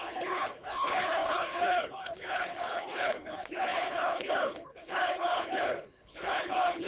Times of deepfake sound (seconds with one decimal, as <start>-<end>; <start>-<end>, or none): 0.0-6.9